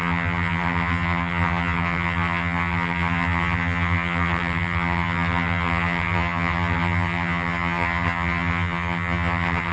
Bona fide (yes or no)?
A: no